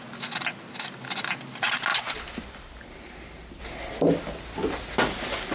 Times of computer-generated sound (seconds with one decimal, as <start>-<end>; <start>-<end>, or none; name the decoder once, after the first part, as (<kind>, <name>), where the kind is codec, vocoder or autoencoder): 1.9-3.6 (vocoder, BigVGAN v2)